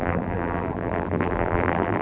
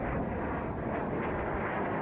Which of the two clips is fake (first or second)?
first